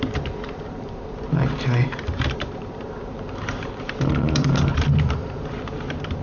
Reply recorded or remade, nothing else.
remade